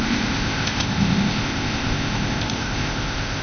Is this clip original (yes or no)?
no